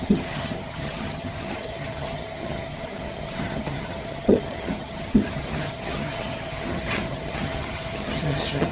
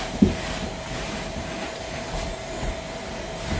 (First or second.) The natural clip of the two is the second